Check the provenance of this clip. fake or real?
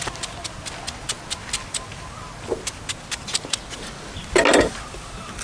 real